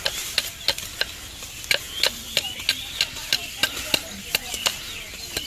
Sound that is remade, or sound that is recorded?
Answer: recorded